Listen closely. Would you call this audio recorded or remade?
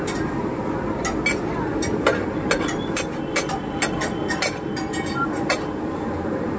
recorded